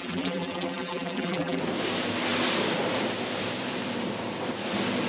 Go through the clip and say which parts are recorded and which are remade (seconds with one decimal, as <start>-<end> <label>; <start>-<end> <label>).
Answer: 0.0-1.6 remade; 1.6-5.1 recorded